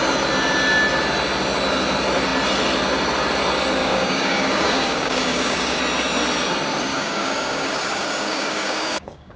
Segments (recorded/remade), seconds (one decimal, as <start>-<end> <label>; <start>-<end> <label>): 0.0-3.8 recorded; 3.8-5.8 remade; 5.8-6.9 recorded; 6.9-9.4 remade